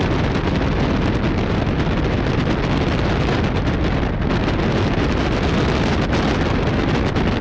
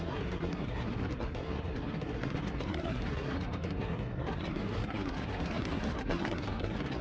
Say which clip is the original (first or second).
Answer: first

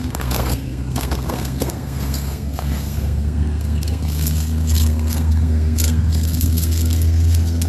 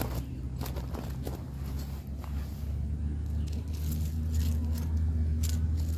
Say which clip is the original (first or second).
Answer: second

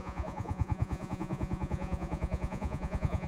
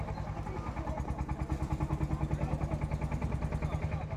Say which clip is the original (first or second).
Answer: second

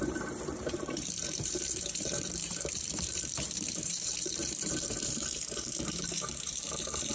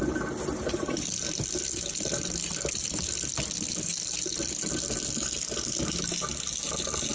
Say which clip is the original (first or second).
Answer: second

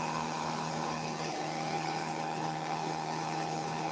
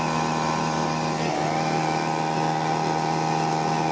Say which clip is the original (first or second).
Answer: second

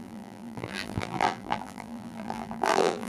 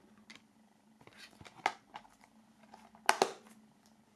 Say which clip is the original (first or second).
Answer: second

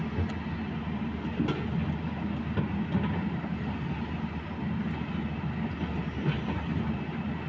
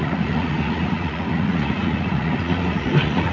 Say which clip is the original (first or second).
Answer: first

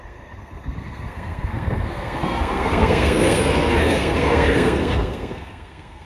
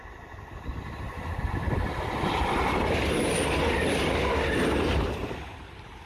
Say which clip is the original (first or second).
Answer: second